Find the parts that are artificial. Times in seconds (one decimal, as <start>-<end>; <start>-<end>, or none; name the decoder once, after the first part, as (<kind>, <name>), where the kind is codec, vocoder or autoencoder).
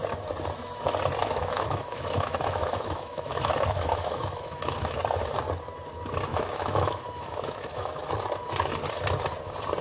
1.2-5.0 (autoencoder, DAC-VAE); 6.3-7.9